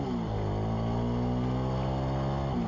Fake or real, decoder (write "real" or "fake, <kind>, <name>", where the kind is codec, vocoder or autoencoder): real